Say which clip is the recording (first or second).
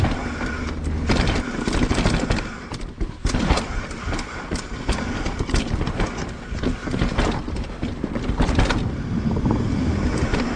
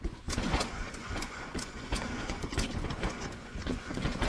first